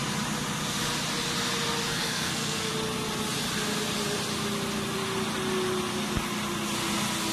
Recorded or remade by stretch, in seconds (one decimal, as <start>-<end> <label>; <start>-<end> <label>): 0.0-1.9 recorded; 1.9-2.7 remade; 2.7-7.3 recorded